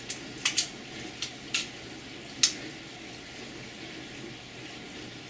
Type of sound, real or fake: real